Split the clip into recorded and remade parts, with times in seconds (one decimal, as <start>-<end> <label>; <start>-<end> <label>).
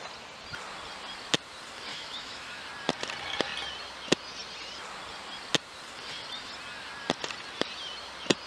0.0-1.9 recorded; 1.9-2.6 remade; 2.6-8.5 recorded